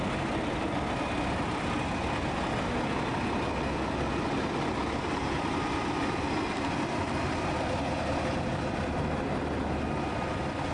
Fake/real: real